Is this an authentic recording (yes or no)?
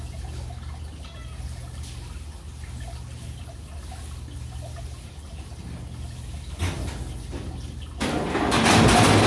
yes